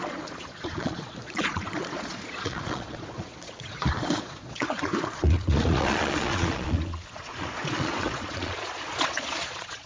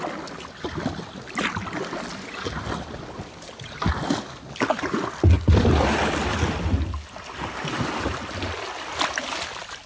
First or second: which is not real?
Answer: first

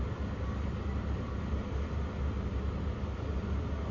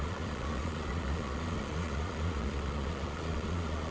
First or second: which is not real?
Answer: second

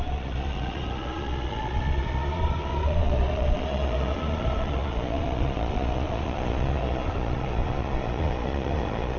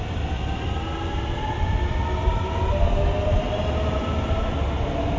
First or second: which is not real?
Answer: first